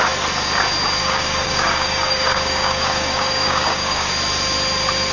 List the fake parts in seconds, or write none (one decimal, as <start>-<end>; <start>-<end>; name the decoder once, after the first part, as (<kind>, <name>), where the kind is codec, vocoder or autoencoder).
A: 1.0-4.1 (codec, DAC)